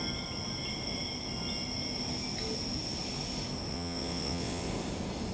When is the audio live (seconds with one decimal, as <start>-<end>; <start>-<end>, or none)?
0.0-3.7; 4.7-5.3